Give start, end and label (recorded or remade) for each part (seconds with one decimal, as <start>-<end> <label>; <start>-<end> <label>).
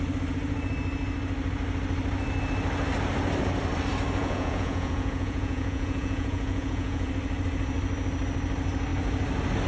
0.0-4.2 recorded; 4.2-7.1 remade; 7.1-9.7 recorded